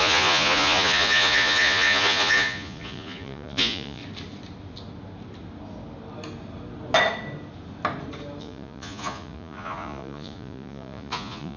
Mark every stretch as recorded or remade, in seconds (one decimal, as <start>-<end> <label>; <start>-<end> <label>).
0.0-4.0 remade; 4.0-8.4 recorded; 8.4-11.6 remade